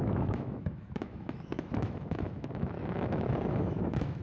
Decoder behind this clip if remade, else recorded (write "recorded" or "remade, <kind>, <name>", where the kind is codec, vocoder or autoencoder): remade, autoencoder, DAC-VAE